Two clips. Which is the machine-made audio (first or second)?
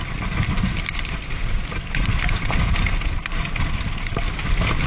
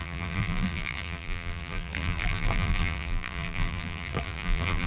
second